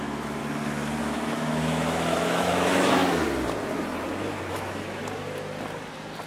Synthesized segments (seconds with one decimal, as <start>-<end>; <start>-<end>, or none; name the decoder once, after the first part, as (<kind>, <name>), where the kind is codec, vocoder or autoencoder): 0.0-0.4 (autoencoder, DAC-VAE); 1.0-3.0; 4.5-5.0